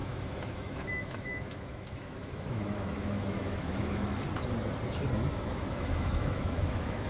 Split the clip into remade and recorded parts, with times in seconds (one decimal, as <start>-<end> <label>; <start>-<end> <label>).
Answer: 0.0-4.1 remade; 4.1-5.3 recorded; 5.3-7.1 remade

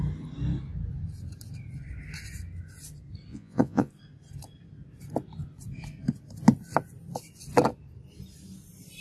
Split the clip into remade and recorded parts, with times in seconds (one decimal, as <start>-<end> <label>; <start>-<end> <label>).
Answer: 0.0-3.3 recorded; 3.3-3.9 remade; 3.9-9.0 recorded

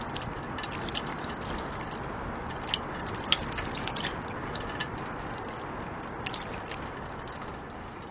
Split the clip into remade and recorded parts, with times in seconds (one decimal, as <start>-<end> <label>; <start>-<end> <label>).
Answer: 0.0-8.1 recorded

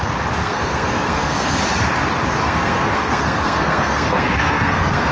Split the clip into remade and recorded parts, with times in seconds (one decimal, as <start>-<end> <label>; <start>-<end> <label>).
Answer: 0.0-0.4 recorded; 0.4-1.6 remade; 1.6-2.4 recorded; 2.4-5.1 remade

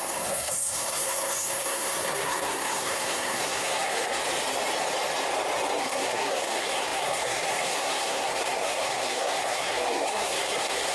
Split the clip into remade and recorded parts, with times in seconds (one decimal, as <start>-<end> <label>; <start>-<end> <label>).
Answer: 0.0-4.2 remade; 4.2-5.8 recorded; 5.8-10.9 remade

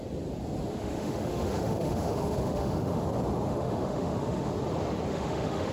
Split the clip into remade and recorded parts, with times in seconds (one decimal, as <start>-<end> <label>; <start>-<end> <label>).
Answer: 0.0-0.7 recorded; 0.7-3.0 remade; 3.0-3.5 recorded; 3.5-4.5 remade; 4.5-5.1 recorded; 5.1-5.7 remade

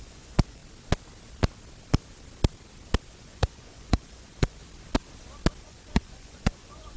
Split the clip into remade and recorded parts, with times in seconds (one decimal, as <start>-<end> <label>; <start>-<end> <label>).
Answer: 0.0-0.6 remade; 0.6-3.1 recorded; 3.1-4.6 remade; 4.6-5.6 recorded; 5.6-7.0 remade